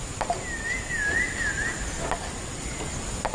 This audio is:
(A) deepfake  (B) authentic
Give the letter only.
B